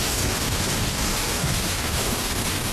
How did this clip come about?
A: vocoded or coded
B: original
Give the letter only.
A